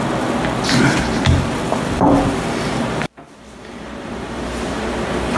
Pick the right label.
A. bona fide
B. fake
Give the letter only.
B